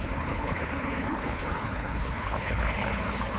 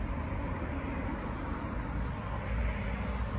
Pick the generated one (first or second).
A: first